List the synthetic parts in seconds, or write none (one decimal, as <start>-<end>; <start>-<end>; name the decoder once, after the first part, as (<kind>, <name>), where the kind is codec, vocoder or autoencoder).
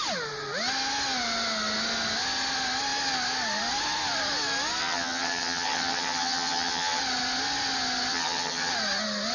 4.8-7.0 (vocoder, HiFi-GAN); 8.1-8.7